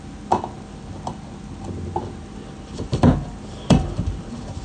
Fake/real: real